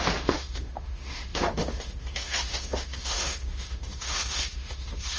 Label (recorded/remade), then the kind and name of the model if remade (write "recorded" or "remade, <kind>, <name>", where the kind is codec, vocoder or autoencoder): remade, autoencoder, DAC-VAE